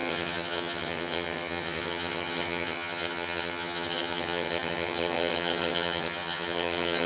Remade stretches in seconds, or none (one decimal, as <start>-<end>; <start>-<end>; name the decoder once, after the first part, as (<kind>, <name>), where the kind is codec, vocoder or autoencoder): 0.0-7.1 (vocoder, HiFi-GAN)